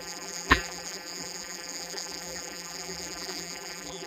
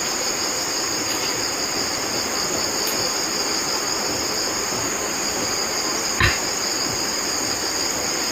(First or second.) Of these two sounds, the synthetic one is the first